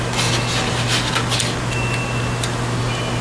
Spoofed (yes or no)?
no